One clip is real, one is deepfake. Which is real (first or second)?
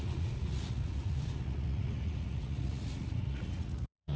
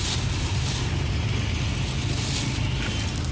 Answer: second